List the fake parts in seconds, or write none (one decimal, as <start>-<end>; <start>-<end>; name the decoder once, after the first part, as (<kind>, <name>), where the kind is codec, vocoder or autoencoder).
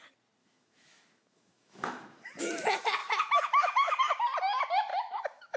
0.4-2.5 (autoencoder, DAC-VAE); 3.0-4.0; 4.9-5.6